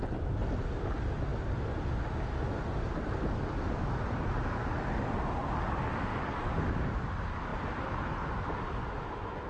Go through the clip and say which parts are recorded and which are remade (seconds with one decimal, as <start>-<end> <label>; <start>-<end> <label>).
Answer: 0.0-6.1 recorded; 6.1-6.6 remade; 6.6-9.5 recorded

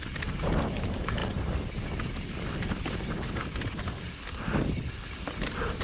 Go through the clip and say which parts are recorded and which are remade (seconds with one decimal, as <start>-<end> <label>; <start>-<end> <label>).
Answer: 0.0-5.8 recorded

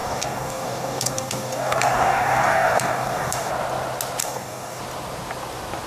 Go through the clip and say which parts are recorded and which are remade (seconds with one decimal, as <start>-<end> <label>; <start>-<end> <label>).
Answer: 0.0-3.5 remade; 3.5-4.2 recorded; 4.2-4.8 remade; 4.8-5.9 recorded

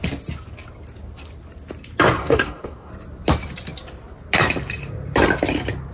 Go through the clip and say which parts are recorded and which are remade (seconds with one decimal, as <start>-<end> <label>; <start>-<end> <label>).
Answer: 0.0-2.2 recorded; 2.2-2.9 remade; 2.9-5.9 recorded

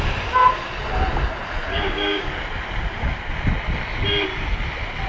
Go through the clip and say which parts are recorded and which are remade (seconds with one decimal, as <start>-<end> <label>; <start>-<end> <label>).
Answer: 0.0-1.7 recorded; 1.7-2.3 remade; 2.3-5.1 recorded

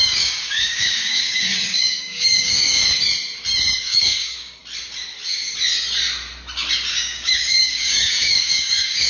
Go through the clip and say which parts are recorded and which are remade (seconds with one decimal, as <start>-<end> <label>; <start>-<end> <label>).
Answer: 0.0-2.8 remade; 2.8-3.8 recorded; 3.8-4.6 remade; 4.6-6.9 recorded; 6.9-9.1 remade

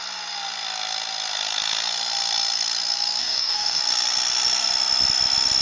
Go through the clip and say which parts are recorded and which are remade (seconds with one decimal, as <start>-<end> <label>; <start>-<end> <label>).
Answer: 0.0-3.2 recorded; 3.2-3.8 remade; 3.8-5.6 recorded